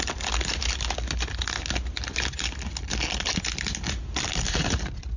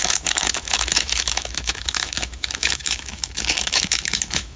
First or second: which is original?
first